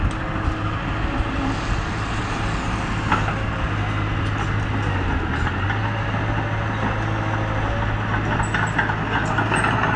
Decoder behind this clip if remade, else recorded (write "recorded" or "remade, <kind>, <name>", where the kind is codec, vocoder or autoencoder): recorded